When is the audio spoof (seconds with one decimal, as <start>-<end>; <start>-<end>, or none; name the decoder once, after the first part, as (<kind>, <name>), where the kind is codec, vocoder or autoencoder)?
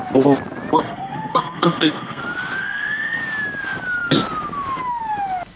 0.8-2.2 (codec, SNAC); 2.6-3.2